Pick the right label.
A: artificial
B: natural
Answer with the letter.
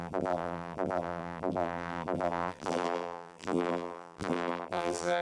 A